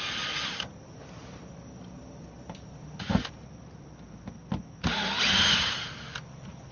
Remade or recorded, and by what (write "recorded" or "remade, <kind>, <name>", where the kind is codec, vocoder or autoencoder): recorded